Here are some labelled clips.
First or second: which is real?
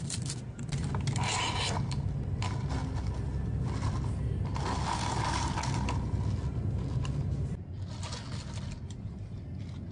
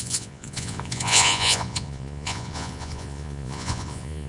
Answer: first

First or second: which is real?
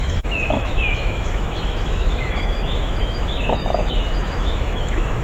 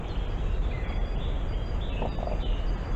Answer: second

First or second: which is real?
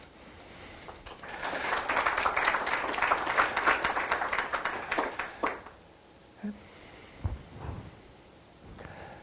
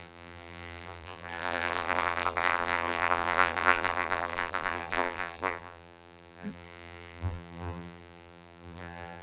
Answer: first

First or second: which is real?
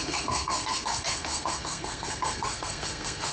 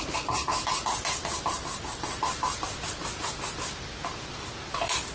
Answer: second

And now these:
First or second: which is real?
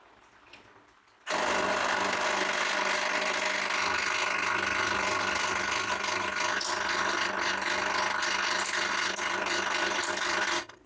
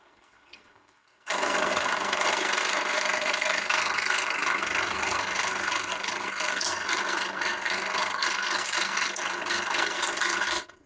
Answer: first